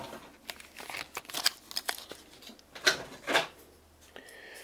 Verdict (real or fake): real